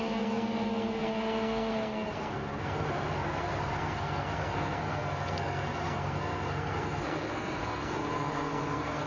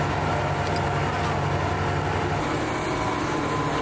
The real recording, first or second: second